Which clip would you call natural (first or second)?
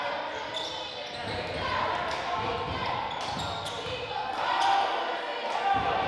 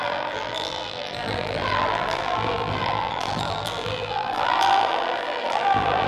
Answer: first